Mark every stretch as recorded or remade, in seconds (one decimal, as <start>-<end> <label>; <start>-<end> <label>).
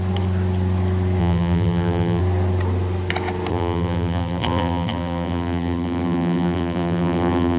0.0-1.2 recorded; 1.2-2.2 remade; 2.2-3.5 recorded; 3.5-7.6 remade